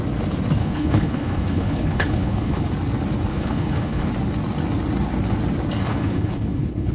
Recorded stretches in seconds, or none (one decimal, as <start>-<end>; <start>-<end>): 0.0-0.6; 2.7-3.3; 4.1-5.8